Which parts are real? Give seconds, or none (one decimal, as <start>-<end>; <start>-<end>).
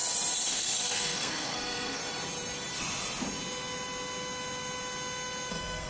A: 0.0-0.5; 2.0-5.5